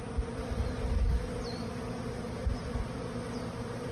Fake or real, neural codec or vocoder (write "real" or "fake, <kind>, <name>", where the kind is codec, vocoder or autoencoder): real